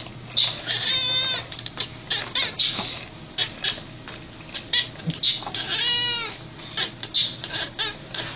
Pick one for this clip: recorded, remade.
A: recorded